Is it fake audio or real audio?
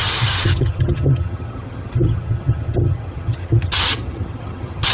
fake